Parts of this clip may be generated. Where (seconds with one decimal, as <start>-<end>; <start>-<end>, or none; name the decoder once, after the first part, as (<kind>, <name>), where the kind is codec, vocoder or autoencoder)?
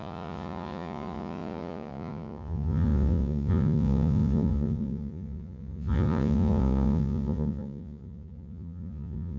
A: 0.0-9.4 (vocoder, Vocos)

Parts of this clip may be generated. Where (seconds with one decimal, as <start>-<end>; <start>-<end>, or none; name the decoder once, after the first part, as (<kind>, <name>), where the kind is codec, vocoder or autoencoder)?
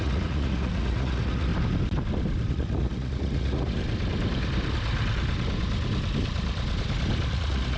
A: 0.0-1.5 (vocoder, Vocos); 2.5-3.8; 7.3-7.8